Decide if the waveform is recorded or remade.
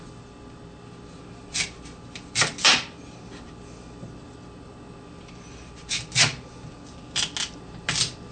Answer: recorded